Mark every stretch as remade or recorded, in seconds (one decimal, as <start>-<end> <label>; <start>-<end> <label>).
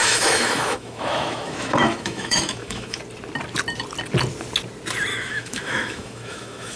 0.0-3.0 remade; 3.0-5.1 recorded; 5.1-6.8 remade